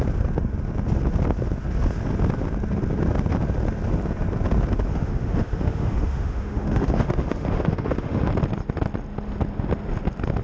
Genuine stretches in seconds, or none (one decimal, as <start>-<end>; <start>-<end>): 0.0-4.9; 8.3-10.4